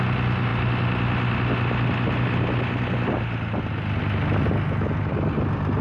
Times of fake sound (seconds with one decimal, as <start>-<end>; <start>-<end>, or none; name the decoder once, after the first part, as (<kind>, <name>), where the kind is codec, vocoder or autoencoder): none